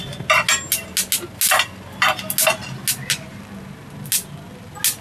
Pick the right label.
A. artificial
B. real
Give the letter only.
B